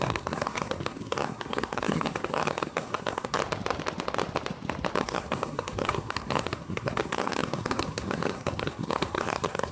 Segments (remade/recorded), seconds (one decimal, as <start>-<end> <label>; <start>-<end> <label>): 0.0-3.4 remade; 3.4-5.0 recorded; 5.0-9.7 remade